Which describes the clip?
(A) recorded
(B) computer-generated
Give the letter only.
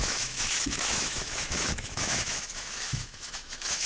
B